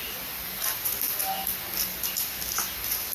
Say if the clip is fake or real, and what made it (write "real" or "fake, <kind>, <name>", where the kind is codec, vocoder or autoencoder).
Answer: real